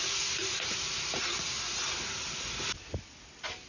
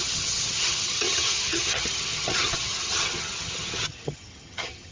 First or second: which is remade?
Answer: second